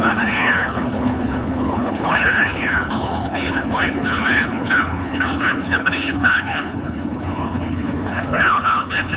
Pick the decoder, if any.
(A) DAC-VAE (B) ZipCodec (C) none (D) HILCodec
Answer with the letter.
D